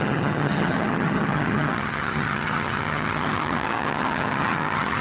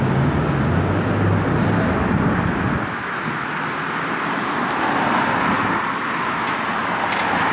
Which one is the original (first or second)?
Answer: second